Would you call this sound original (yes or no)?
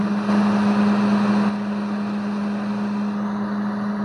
yes